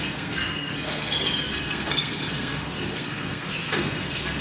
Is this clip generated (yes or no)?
yes